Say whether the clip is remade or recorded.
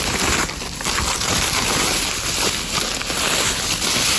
recorded